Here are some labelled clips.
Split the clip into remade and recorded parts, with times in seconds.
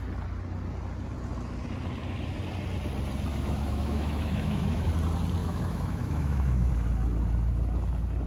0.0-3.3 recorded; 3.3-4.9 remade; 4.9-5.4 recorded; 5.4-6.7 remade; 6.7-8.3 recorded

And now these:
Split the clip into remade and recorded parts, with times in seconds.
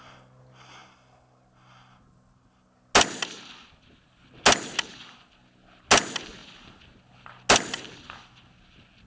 0.0-9.1 recorded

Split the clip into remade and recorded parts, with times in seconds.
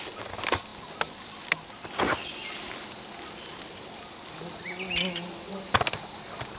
0.0-6.6 recorded